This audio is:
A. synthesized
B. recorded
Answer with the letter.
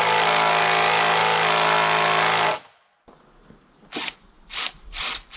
B